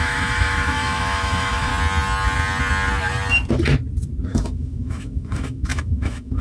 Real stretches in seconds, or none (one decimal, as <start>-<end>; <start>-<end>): 1.7-4.3